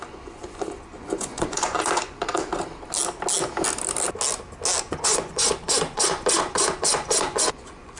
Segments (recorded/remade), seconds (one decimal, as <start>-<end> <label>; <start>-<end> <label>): 0.0-2.5 remade; 2.5-4.8 recorded; 4.8-8.0 remade